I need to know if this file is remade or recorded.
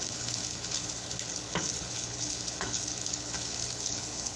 remade